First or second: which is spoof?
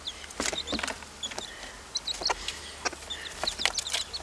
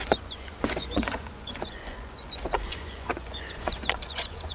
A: second